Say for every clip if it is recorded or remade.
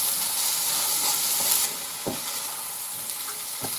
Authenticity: recorded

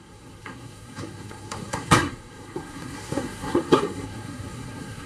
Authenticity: remade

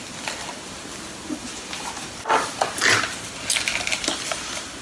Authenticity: recorded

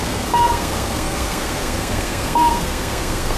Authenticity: remade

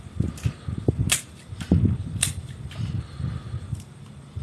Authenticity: recorded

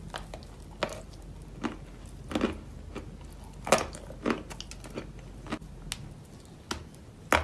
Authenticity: recorded